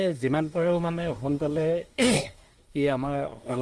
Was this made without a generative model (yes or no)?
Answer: no